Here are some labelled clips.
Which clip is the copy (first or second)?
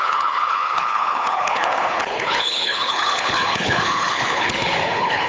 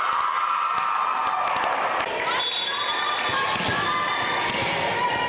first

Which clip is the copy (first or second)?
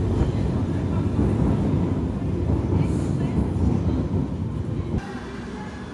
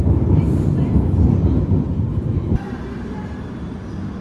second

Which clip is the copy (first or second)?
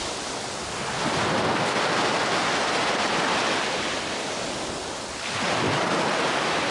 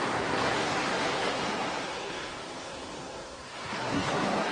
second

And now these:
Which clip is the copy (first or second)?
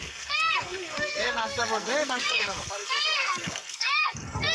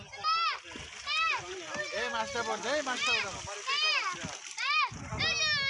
first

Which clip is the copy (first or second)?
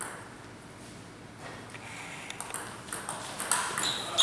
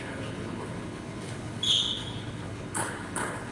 second